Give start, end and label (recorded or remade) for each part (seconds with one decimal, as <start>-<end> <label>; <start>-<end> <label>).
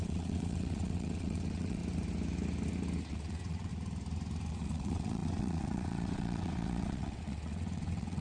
0.0-1.8 remade; 1.8-3.0 recorded; 3.0-3.7 remade; 3.7-4.5 recorded; 4.5-8.2 remade